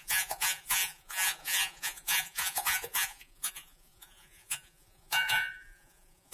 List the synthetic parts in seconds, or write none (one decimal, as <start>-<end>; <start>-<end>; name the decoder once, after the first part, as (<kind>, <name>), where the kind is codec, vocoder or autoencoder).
0.0-6.3 (vocoder, Vocos)